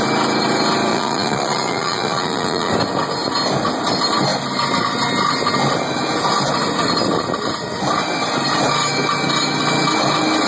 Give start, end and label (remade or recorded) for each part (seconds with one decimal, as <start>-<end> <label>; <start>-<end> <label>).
0.0-0.9 recorded; 0.9-2.7 remade; 2.7-10.5 recorded